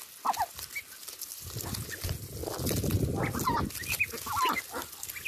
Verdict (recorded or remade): recorded